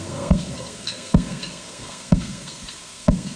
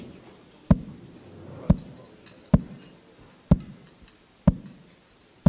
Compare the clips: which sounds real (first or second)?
second